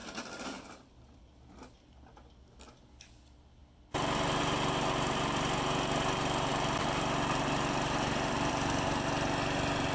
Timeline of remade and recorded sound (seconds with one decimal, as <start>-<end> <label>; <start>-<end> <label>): 0.0-1.5 remade; 1.5-6.5 recorded; 6.5-8.5 remade; 8.5-9.9 recorded